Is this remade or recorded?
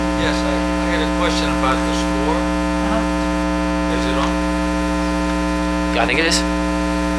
recorded